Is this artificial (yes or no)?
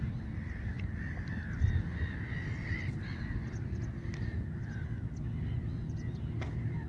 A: no